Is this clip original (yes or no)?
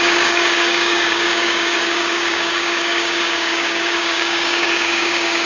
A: no